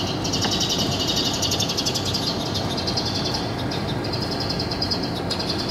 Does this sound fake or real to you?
real